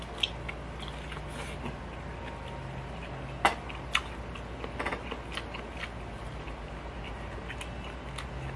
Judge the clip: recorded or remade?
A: recorded